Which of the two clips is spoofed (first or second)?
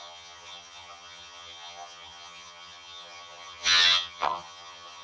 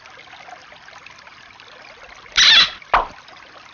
first